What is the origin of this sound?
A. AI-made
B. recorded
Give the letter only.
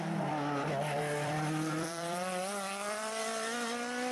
A